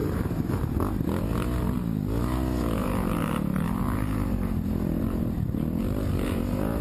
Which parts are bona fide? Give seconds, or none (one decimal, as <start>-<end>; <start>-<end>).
0.7-2.8